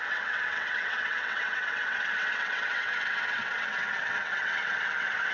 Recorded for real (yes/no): no